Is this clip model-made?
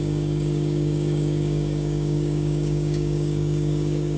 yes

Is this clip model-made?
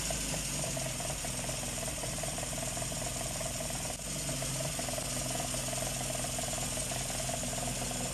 no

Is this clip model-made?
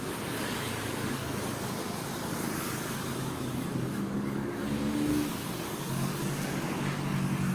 yes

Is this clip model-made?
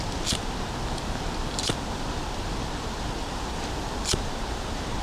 no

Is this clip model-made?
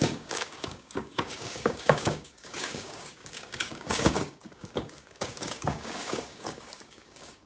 yes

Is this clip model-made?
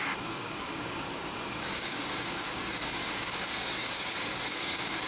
yes